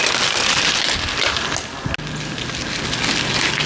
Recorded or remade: recorded